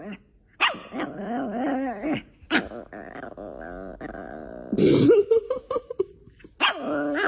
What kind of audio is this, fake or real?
real